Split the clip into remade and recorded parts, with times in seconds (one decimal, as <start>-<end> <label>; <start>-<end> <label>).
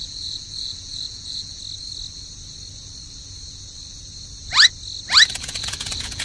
0.0-1.6 remade; 1.6-5.3 recorded; 5.3-6.2 remade